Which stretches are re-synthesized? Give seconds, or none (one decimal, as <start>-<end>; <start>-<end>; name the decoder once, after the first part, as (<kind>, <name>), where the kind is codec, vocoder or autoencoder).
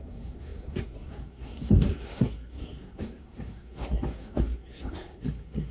0.0-5.7 (codec, SNAC)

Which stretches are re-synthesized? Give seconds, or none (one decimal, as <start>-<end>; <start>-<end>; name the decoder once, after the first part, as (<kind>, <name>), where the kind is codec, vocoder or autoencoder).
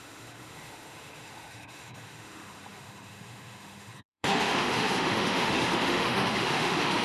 0.0-7.0 (autoencoder, DAC-VAE)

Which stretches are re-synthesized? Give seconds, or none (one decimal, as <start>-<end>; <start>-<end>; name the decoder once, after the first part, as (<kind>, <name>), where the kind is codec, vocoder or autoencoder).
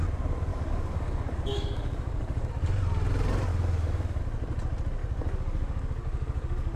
0.5-2.5 (codec, DAC); 3.5-4.2; 5.0-6.8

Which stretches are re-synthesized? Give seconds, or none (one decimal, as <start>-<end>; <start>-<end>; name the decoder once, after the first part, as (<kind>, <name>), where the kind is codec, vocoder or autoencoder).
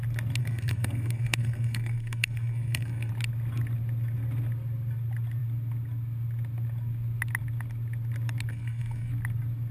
0.4-3.1 (codec, SNAC); 8.5-9.1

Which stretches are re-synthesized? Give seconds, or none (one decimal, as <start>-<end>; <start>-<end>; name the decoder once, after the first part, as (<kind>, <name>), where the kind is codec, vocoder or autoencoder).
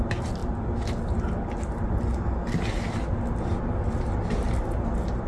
none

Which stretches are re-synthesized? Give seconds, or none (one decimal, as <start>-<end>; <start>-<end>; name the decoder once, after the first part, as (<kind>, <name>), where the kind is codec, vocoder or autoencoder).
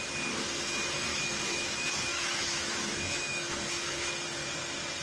1.1-4.1 (autoencoder, DAC-VAE)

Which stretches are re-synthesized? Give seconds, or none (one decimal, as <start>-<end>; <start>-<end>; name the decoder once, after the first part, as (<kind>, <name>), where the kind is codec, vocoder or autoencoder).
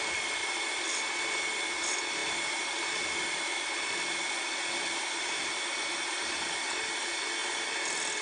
0.4-1.0 (vocoder, BigVGAN v2); 2.2-6.7; 7.4-8.2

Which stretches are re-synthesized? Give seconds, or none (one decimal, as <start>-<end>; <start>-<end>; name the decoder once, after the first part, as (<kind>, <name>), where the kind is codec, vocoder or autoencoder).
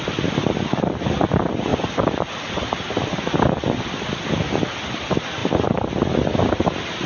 none